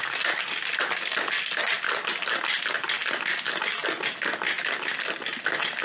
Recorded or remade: recorded